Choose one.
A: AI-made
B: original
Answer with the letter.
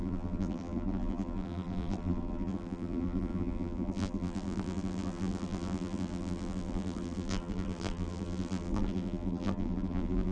A